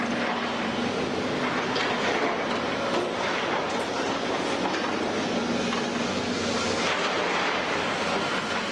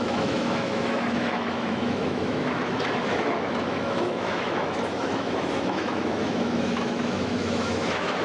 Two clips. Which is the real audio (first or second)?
first